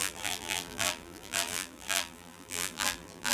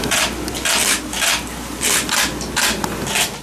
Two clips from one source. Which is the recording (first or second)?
second